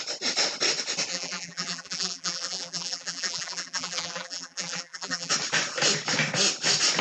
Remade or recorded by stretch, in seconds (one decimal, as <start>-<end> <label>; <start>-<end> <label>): 0.0-1.1 recorded; 1.1-5.3 remade; 5.3-7.0 recorded